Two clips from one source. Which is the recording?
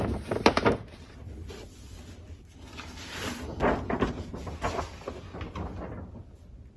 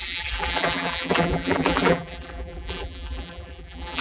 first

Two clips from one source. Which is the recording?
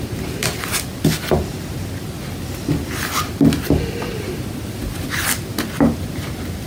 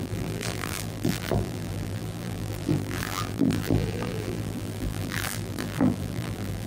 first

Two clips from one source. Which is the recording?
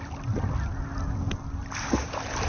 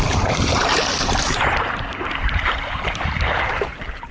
first